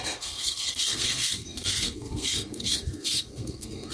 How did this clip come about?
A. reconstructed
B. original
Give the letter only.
A